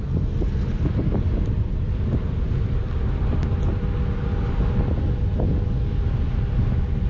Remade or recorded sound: recorded